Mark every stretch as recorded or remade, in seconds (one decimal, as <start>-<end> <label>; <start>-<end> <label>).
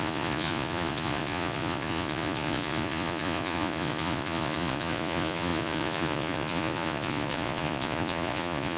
0.0-8.8 remade